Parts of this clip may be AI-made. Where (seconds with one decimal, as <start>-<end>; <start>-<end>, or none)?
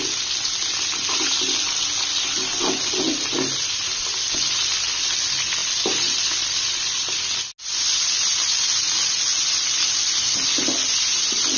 none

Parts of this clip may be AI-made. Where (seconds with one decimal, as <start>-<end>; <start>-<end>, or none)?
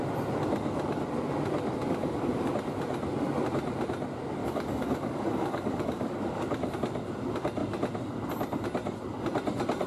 1.8-2.5; 4.4-6.7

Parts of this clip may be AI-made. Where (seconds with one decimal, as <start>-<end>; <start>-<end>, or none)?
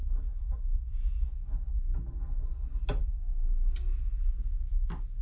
0.0-1.3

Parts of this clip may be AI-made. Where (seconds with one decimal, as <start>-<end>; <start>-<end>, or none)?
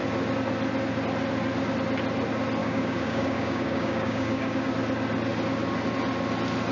2.6-4.7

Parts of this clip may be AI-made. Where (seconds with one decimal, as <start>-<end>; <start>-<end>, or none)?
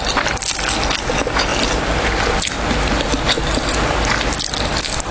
none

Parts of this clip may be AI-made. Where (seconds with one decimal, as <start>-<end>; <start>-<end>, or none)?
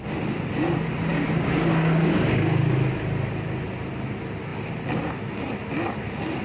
1.1-2.7